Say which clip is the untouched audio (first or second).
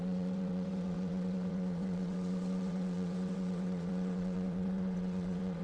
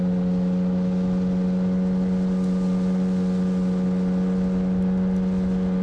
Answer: second